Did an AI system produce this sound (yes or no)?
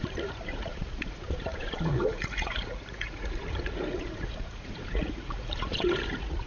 yes